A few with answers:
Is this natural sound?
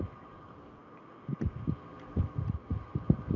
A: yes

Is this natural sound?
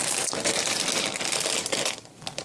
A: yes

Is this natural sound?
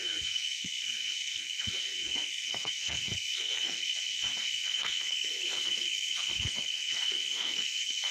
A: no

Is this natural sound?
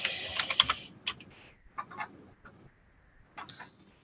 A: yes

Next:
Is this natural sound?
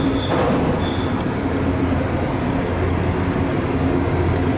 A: yes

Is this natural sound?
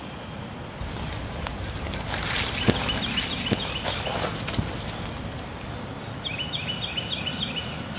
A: yes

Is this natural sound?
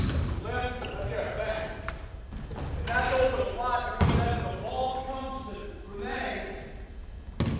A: yes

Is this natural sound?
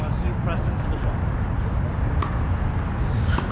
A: yes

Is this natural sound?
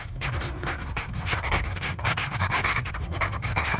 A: no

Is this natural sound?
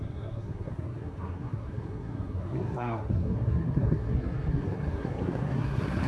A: no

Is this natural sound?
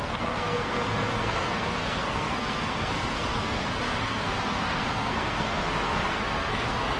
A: no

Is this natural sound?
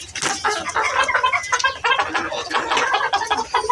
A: yes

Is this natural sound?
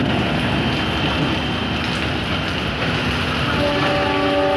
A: yes